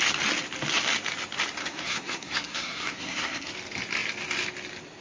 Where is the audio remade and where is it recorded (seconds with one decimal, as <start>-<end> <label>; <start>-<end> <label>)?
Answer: 0.0-1.6 recorded; 1.6-3.5 remade; 3.5-5.0 recorded